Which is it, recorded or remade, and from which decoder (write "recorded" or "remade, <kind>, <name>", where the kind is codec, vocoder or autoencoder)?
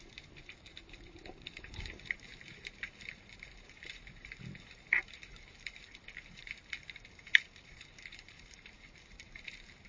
remade, vocoder, BigVGAN v2